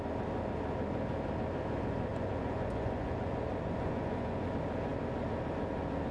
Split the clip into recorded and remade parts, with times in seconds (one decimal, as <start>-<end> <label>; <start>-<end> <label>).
0.0-2.1 recorded; 2.1-4.5 remade; 4.5-6.1 recorded